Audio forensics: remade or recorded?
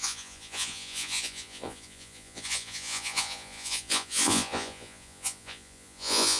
remade